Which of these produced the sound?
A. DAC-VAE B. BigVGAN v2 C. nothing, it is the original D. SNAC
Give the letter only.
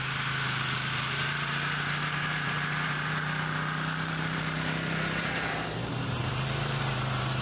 B